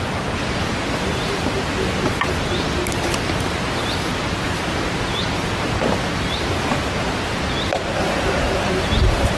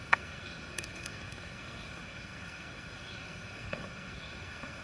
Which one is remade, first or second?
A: second